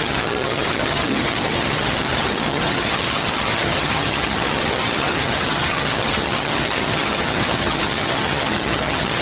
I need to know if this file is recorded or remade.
remade